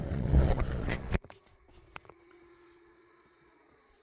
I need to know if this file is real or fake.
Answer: fake